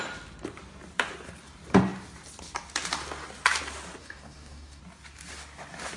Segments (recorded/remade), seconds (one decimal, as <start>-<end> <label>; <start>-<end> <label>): 0.0-4.0 recorded; 4.0-4.8 remade; 4.8-6.0 recorded